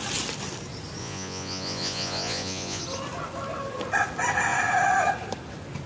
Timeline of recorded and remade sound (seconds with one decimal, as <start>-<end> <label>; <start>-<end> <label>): 0.0-1.0 recorded; 1.0-2.8 remade; 2.8-5.9 recorded